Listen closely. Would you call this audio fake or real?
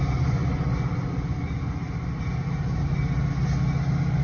real